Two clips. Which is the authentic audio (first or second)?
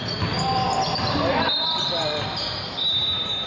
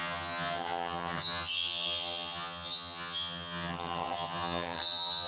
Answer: first